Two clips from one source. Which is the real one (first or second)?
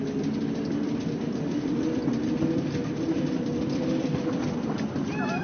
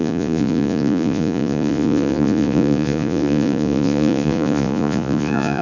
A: first